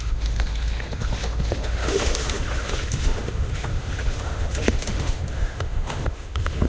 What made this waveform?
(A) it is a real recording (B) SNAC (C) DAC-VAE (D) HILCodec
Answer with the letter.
C